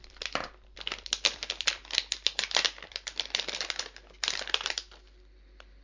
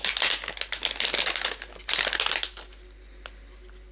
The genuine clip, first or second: second